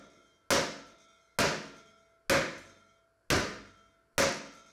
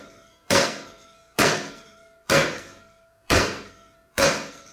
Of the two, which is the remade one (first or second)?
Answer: second